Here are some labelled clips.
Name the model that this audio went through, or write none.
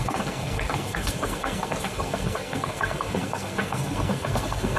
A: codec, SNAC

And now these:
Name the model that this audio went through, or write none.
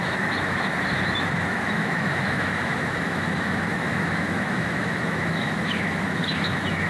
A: autoencoder, DAC-VAE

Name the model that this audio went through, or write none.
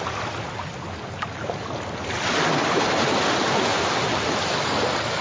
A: none